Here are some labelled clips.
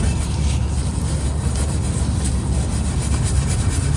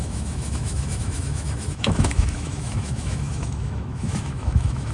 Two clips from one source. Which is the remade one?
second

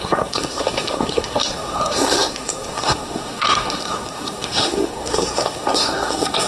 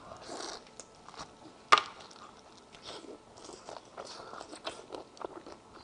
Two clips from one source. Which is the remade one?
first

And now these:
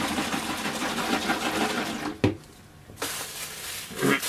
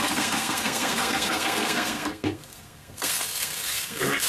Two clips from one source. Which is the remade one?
second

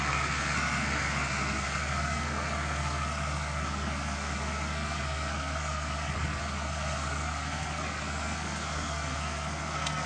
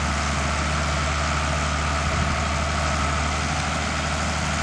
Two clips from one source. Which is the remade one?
first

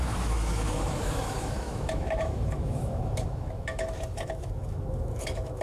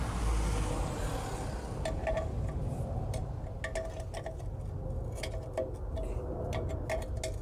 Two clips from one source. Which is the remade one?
first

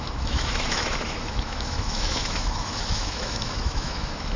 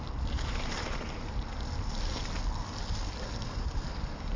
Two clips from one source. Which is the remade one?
first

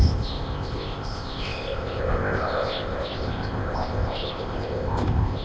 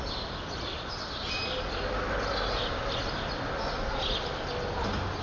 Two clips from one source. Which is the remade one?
first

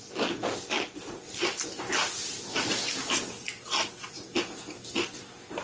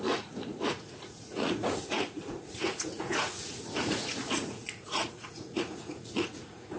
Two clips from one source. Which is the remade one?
second